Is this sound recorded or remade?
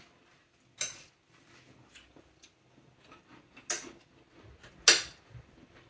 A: recorded